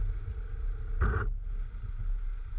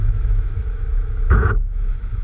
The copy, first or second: second